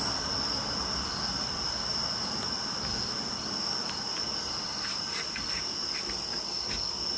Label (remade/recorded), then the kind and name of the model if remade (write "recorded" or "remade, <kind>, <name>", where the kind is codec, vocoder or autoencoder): recorded